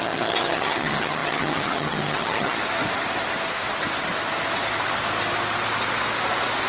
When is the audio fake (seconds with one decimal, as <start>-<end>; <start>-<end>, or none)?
0.0-2.6